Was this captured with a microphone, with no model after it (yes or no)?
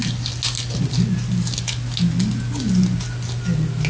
yes